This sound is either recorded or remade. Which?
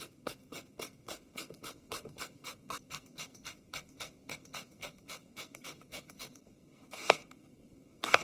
remade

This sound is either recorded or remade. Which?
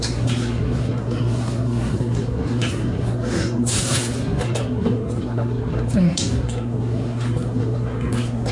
remade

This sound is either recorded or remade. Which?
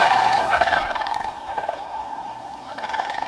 remade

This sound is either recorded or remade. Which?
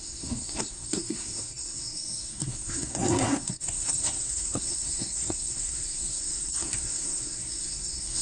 remade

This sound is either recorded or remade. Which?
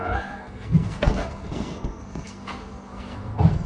remade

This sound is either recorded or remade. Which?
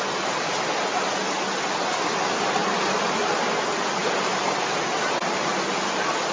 recorded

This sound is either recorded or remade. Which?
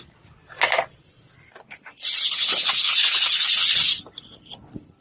recorded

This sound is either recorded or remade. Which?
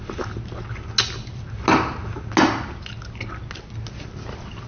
recorded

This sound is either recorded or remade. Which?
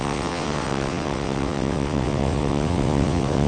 remade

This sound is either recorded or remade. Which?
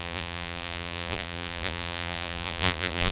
remade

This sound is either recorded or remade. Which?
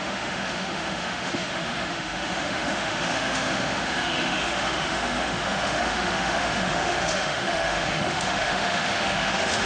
remade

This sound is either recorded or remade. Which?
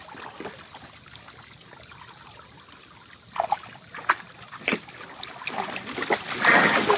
recorded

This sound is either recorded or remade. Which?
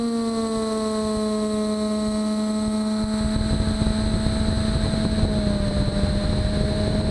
recorded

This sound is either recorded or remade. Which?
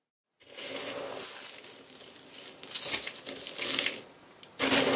recorded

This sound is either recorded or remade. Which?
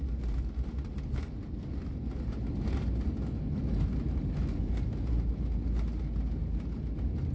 recorded